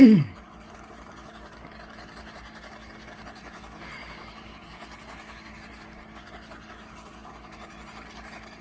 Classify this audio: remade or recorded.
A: remade